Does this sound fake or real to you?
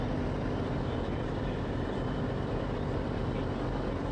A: real